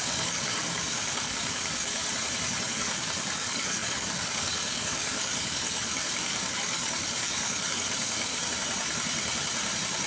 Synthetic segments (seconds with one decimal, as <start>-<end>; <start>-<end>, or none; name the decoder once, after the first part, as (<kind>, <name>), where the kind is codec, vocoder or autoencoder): 0.0-2.0 (codec, DAC); 2.7-8.3